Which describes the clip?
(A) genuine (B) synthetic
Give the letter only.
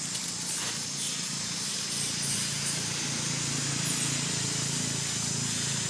A